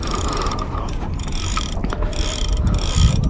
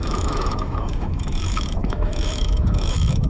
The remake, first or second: second